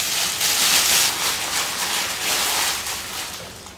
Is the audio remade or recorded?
recorded